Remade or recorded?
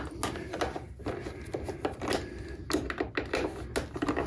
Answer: recorded